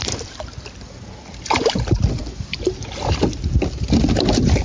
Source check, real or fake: real